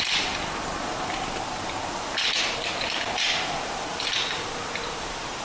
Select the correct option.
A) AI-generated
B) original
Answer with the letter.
A